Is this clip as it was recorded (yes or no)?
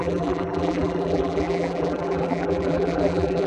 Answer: no